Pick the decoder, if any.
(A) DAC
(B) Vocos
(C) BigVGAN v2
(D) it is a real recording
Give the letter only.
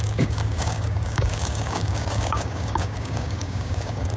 A